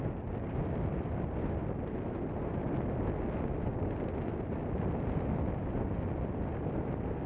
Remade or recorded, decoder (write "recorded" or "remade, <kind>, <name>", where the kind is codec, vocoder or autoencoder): recorded